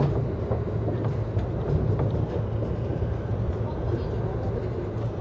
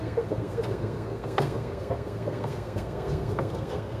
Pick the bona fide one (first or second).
first